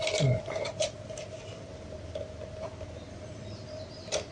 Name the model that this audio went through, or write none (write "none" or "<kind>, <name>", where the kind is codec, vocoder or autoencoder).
none